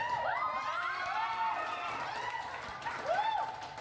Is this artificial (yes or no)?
no